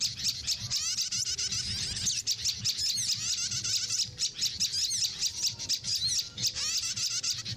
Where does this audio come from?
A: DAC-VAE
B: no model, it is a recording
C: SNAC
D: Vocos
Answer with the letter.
B